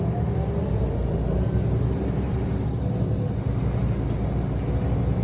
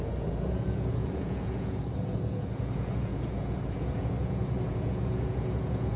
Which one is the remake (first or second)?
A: second